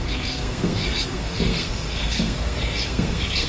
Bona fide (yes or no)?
no